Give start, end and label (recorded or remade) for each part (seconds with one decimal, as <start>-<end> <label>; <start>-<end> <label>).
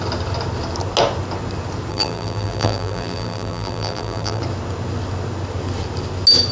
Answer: 0.0-1.9 recorded; 1.9-4.4 remade; 4.4-6.5 recorded